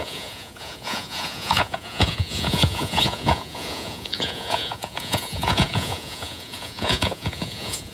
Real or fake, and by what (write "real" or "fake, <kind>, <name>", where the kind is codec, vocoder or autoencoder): fake, vocoder, Vocos